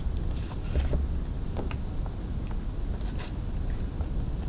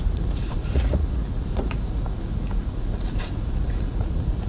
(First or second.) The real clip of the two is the first